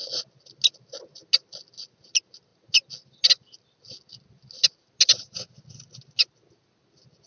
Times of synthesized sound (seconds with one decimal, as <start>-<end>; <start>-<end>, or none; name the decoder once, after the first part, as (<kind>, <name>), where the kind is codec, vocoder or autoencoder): none